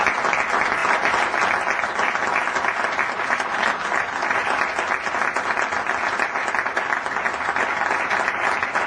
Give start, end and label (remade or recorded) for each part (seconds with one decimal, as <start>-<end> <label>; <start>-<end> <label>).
0.0-8.9 recorded